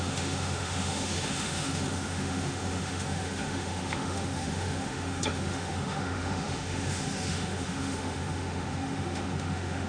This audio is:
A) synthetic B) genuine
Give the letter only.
A